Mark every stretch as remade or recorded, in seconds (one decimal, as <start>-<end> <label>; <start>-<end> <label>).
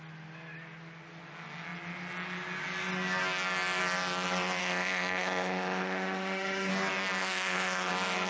0.0-4.6 recorded; 4.6-6.7 remade; 6.7-7.2 recorded; 7.2-7.9 remade; 7.9-8.3 recorded